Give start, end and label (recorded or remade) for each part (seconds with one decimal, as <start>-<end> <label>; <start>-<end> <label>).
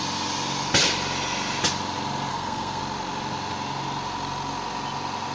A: 0.0-2.3 recorded; 2.3-2.8 remade; 2.8-5.3 recorded